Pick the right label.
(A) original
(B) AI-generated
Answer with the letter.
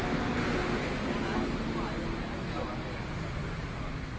A